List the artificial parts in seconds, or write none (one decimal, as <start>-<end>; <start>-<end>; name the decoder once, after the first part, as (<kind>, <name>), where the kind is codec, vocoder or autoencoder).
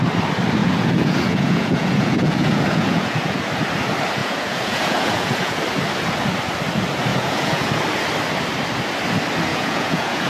0.6-3.5 (vocoder, Vocos); 4.2-5.6; 7.1-7.7; 9.5-10.3